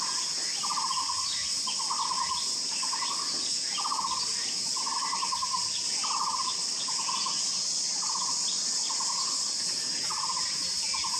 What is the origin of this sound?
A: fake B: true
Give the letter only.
B